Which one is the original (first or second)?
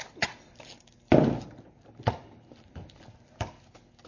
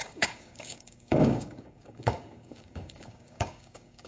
first